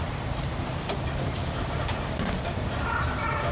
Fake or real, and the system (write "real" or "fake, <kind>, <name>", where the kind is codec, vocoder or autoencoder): fake, vocoder, BigVGAN v2